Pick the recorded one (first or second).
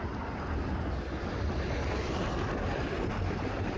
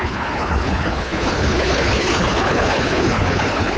first